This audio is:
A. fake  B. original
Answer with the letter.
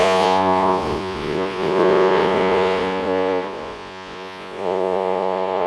A